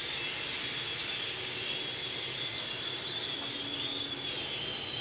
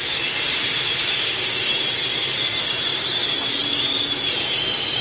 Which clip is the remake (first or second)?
second